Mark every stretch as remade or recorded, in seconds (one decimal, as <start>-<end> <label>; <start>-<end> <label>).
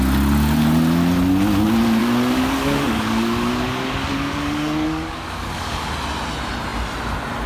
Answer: 0.0-2.0 recorded; 2.0-5.9 remade; 5.9-7.5 recorded